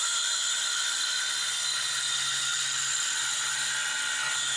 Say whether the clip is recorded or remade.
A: recorded